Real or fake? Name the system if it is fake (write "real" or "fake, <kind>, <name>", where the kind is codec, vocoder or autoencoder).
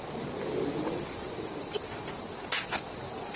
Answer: real